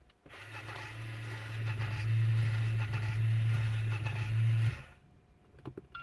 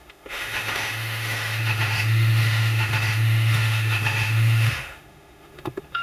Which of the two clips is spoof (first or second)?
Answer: second